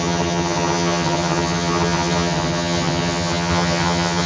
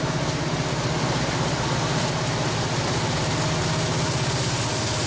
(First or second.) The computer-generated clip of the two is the first